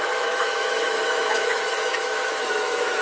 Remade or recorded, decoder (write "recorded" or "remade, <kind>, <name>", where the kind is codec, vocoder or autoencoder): remade, autoencoder, DAC-VAE